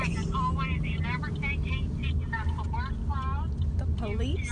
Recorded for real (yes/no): yes